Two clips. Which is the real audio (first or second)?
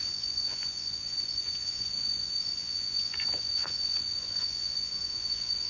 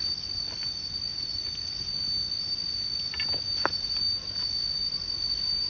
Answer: second